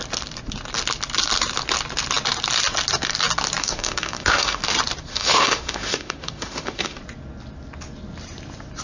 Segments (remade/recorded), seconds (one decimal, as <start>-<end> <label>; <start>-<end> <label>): 0.0-3.6 recorded; 3.6-4.6 remade; 4.6-5.1 recorded; 5.1-7.0 remade; 7.0-8.8 recorded